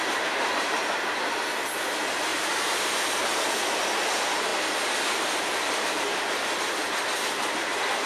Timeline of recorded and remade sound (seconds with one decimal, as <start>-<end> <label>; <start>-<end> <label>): 0.0-2.3 recorded; 2.3-2.8 remade; 2.8-8.1 recorded